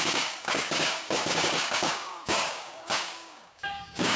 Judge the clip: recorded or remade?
remade